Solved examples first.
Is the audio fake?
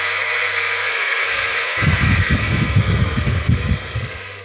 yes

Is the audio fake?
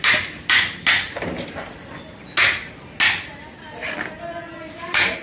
no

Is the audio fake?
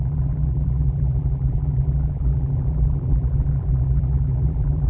yes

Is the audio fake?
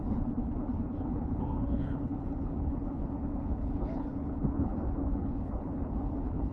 yes